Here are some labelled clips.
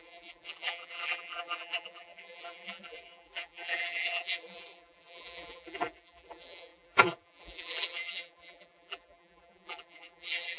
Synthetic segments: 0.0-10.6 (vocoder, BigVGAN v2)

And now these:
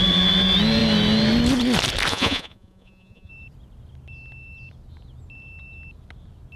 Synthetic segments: 2.1-3.3 (vocoder, Vocos)

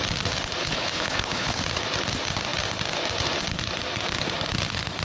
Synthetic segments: 0.6-1.6 (codec, HILCodec)

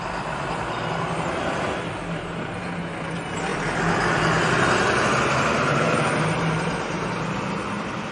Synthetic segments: none

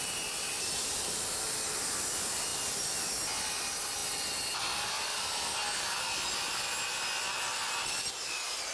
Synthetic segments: none

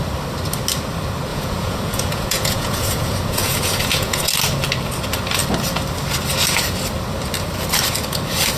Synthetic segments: 1.3-4.3 (vocoder, Vocos)

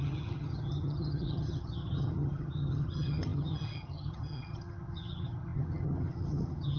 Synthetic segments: 0.0-6.8 (vocoder, HiFi-GAN)

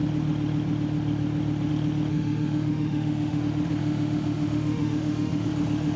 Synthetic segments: 2.1-3.4 (autoencoder, DAC-VAE); 3.8-5.5